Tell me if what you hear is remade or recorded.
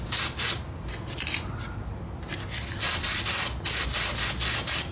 recorded